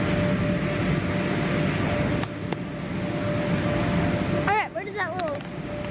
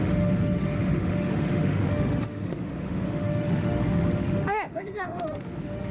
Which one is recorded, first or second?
first